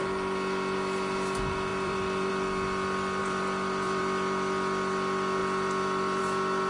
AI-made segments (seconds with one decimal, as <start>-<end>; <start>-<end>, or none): 1.7-2.3; 3.2-4.0; 5.4-6.2

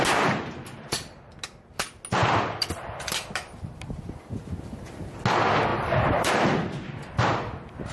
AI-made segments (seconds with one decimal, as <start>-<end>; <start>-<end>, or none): 2.2-3.9; 5.7-6.3

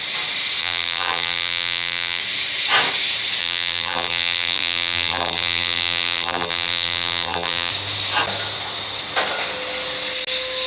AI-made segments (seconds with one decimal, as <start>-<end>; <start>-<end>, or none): 0.6-2.2; 3.4-7.7

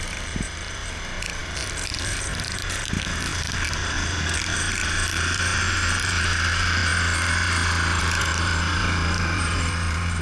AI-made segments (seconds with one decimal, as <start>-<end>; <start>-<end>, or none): 0.0-6.8; 8.0-10.2

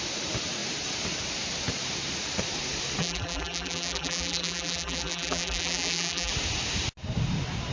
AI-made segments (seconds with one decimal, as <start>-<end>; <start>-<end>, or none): 3.0-6.3